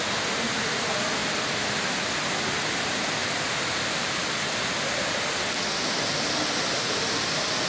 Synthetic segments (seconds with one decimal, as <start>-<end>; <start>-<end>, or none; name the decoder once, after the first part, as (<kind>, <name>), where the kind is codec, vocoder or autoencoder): none